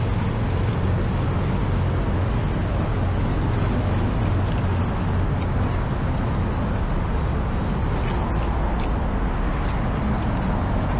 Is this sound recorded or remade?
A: recorded